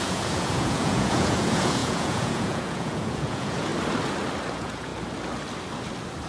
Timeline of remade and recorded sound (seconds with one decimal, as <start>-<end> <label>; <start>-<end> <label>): 0.0-3.7 remade; 3.7-4.5 recorded; 4.5-4.9 remade; 4.9-6.3 recorded

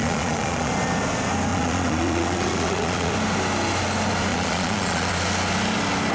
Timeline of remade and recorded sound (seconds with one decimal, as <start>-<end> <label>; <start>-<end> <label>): 0.0-0.7 remade; 0.7-1.5 recorded; 1.5-3.1 remade; 3.1-4.3 recorded; 4.3-5.1 remade; 5.1-6.1 recorded

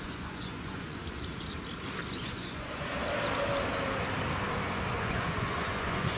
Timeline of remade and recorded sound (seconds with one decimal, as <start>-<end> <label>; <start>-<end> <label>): 0.0-1.0 remade; 1.0-2.1 recorded; 2.1-3.0 remade; 3.0-4.9 recorded; 4.9-6.2 remade

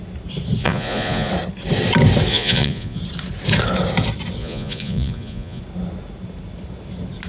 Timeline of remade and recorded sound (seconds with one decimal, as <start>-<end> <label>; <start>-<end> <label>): 0.0-0.6 recorded; 0.6-1.3 remade; 1.3-2.3 recorded; 2.3-3.0 remade; 3.0-4.4 recorded; 4.4-5.6 remade; 5.6-7.3 recorded

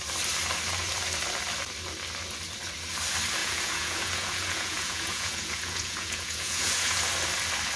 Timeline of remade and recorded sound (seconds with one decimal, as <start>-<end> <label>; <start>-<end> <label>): 0.0-3.4 recorded; 3.4-7.0 remade; 7.0-7.8 recorded